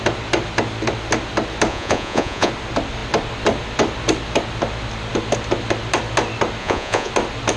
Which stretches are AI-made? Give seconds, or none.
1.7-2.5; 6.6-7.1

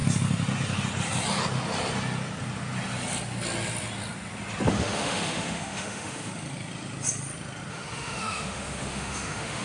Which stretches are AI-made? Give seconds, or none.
4.7-6.3; 7.7-9.6

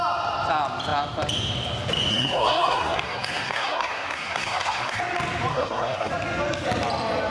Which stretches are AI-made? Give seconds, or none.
2.1-5.0; 5.5-6.1

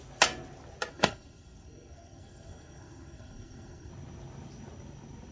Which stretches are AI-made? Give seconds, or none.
0.9-3.9

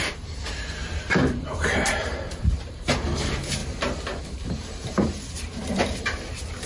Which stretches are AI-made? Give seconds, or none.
0.0-3.6; 4.2-6.7

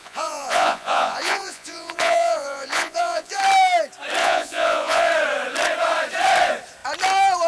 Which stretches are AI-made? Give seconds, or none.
0.0-3.4; 4.2-5.1

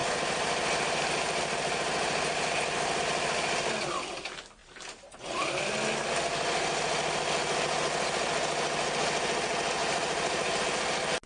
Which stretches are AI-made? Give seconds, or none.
0.0-3.0; 4.6-5.7; 9.8-10.6

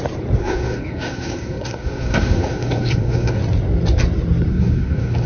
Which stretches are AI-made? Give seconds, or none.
0.4-3.4; 4.5-5.3